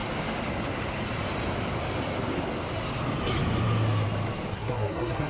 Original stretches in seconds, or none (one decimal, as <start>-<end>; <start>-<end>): 0.0-4.5